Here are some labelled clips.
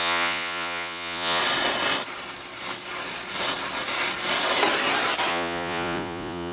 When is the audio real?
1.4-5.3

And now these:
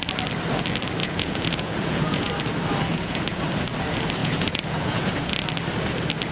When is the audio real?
0.0-1.0; 2.3-2.9; 3.4-4.2; 5.3-6.3

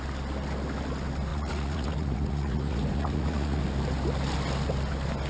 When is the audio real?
0.0-1.3; 3.6-5.3

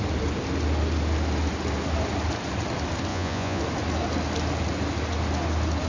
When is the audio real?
0.0-3.1; 3.6-5.9

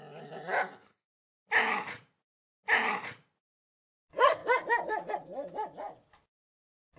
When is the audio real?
0.0-7.0